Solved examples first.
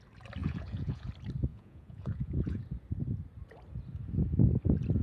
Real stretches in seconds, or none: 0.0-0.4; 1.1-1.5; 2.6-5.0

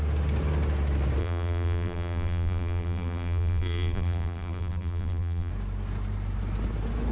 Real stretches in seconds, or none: 0.0-1.2; 5.5-7.1

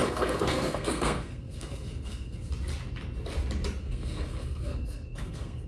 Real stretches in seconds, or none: 2.5-3.8

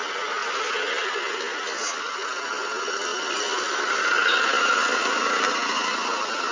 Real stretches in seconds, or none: 0.0-6.5

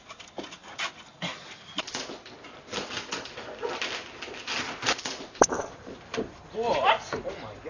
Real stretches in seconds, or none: 0.6-5.2

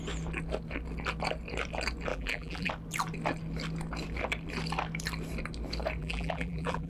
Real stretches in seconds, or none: 0.0-2.1; 2.7-6.0